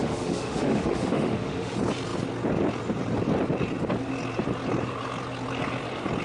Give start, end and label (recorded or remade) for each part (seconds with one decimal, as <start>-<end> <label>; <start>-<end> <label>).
0.0-1.7 remade; 1.7-6.2 recorded